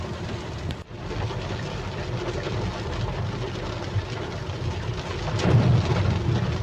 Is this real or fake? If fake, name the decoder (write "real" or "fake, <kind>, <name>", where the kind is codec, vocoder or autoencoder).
real